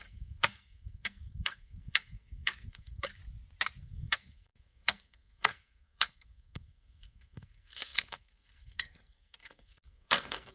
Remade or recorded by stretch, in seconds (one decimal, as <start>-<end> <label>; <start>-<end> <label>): 0.0-3.2 remade; 3.2-3.8 recorded; 3.8-10.5 remade